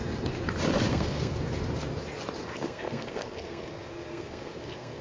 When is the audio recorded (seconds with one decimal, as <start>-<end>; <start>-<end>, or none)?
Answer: 0.0-0.9; 1.4-2.4

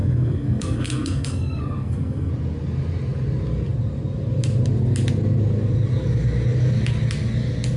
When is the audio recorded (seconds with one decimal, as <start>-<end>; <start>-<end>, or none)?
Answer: 2.3-7.8

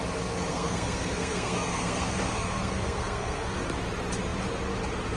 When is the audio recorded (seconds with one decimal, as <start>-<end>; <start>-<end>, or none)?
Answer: 0.0-0.5; 3.6-5.2

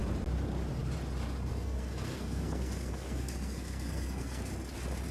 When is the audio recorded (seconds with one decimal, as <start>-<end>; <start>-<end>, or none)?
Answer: 0.0-1.5; 4.5-5.1

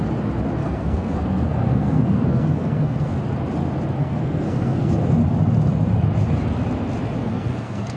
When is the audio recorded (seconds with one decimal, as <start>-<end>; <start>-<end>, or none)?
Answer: 0.0-0.6; 3.1-4.0; 4.9-7.2

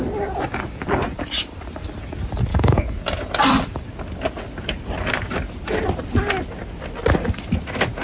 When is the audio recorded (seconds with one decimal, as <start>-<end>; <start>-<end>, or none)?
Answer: 0.0-2.5; 3.0-8.0

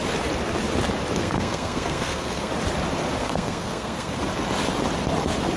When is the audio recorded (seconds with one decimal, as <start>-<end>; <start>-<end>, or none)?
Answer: 0.0-1.2; 2.5-3.2; 4.2-5.6